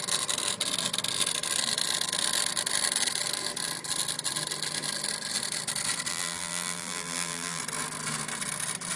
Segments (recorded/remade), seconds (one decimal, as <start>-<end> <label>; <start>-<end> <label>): 0.0-6.1 recorded; 6.1-7.6 remade; 7.6-9.0 recorded